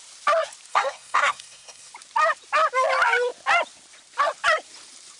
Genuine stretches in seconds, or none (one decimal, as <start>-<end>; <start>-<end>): 0.0-0.7; 1.9-5.2